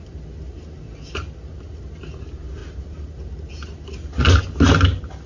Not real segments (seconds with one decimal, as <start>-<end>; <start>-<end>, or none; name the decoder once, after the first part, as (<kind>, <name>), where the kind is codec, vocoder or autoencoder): none

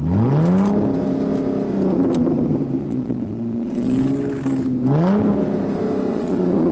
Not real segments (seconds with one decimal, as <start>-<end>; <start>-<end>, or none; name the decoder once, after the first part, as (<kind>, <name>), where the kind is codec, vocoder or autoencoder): 2.8-4.0 (vocoder, Vocos); 6.1-6.7

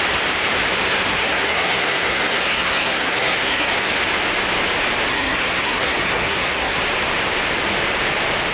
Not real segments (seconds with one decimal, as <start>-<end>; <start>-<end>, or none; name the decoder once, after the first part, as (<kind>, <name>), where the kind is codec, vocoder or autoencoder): 1.1-3.7 (codec, SNAC); 5.1-6.8